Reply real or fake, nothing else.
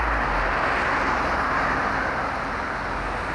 real